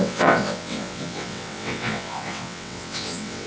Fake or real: fake